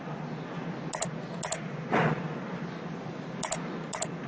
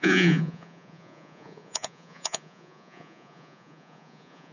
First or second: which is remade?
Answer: second